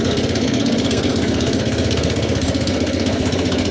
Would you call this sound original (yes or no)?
no